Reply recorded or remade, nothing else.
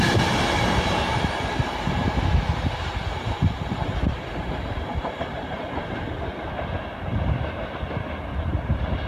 recorded